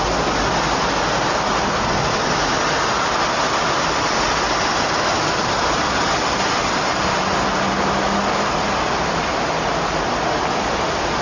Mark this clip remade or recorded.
recorded